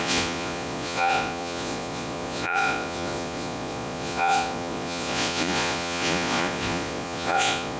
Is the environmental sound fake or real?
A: fake